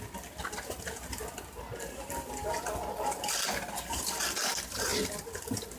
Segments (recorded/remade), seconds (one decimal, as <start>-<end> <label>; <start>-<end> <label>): 0.0-5.8 recorded